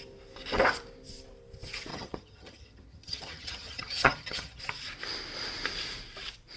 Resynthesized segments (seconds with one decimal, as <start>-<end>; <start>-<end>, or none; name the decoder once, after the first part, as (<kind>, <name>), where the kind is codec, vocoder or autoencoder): 1.9-4.6 (vocoder, HiFi-GAN)

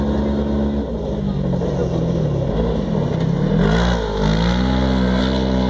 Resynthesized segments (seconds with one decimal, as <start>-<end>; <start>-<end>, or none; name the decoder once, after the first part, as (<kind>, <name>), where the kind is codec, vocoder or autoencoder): none

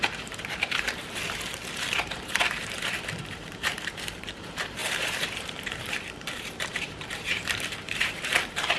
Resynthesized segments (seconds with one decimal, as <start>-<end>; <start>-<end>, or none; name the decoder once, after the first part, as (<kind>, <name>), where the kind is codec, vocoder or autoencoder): 0.0-8.8 (vocoder, BigVGAN v2)